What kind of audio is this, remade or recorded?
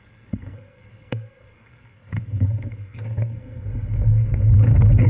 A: remade